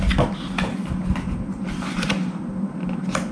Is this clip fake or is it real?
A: real